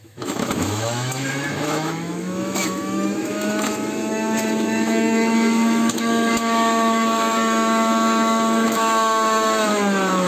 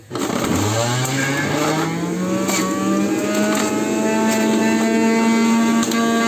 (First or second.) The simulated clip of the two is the first